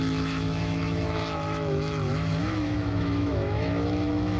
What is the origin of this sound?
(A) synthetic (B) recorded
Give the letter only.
A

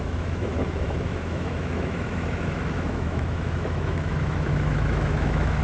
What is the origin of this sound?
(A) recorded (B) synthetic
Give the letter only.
B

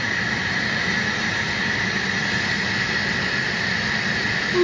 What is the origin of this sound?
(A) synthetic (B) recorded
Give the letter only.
B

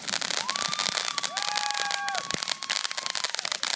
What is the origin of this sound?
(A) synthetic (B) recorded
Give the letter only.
B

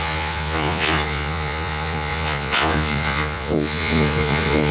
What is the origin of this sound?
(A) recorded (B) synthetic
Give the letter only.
B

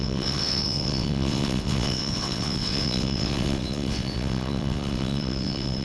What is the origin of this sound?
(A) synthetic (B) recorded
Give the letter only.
A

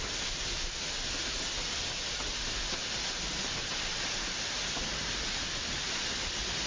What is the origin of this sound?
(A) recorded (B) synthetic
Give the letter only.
A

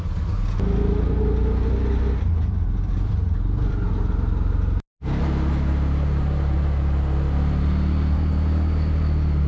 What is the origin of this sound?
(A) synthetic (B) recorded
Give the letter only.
B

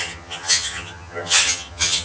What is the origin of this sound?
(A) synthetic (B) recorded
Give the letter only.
A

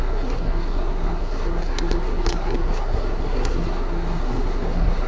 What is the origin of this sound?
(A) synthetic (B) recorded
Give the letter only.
A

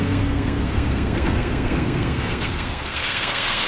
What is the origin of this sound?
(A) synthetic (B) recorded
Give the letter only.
A